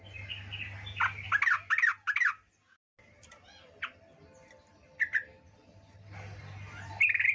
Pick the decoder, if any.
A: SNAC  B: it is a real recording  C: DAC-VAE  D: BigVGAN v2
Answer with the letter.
B